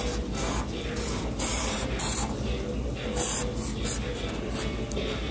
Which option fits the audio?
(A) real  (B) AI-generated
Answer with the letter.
A